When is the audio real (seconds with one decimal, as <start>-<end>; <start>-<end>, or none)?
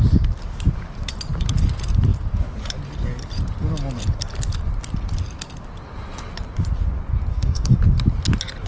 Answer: 0.0-7.3; 7.8-8.7